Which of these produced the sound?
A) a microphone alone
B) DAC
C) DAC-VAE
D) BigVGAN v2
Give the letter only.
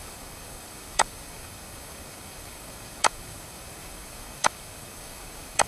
B